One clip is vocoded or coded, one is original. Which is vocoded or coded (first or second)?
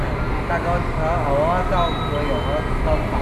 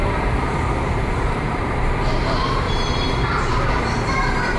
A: second